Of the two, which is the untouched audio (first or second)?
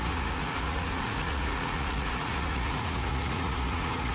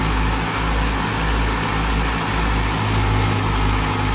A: second